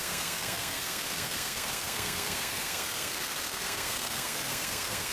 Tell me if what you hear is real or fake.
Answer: fake